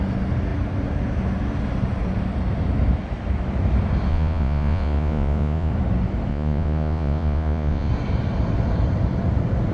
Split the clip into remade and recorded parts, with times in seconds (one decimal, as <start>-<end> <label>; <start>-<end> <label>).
0.0-4.1 recorded; 4.1-5.7 remade; 5.7-6.3 recorded; 6.3-7.9 remade; 7.9-9.7 recorded